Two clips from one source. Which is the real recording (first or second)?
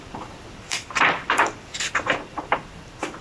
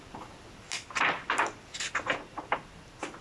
second